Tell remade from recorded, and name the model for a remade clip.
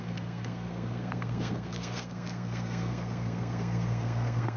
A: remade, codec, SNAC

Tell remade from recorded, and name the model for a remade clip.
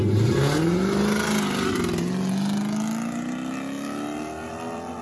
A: recorded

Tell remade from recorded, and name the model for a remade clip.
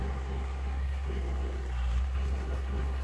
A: remade, codec, SNAC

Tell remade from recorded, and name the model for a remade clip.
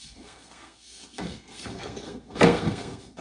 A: remade, codec, SNAC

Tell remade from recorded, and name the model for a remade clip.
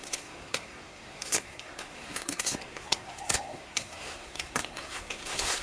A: remade, codec, SNAC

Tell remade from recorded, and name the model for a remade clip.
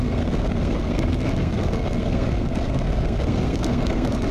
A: remade, codec, SNAC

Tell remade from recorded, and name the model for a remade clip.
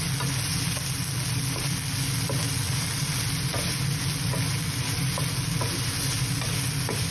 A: recorded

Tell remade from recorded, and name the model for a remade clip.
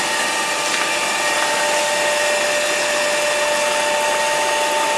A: recorded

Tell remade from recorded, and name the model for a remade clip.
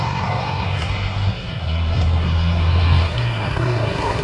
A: remade, codec, SNAC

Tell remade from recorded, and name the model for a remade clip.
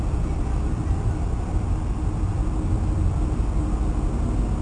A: recorded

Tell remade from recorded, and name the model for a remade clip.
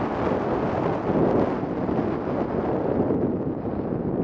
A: recorded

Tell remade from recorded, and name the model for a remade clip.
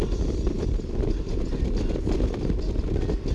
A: recorded